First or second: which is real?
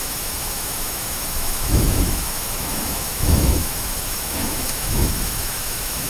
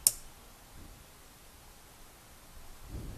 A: second